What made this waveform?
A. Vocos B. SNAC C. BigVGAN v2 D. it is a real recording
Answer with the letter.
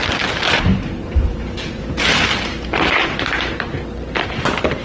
D